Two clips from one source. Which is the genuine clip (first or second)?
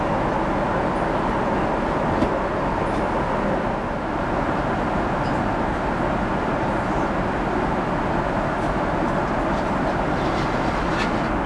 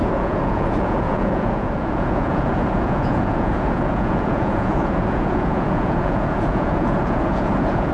first